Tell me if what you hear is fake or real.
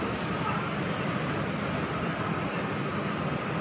real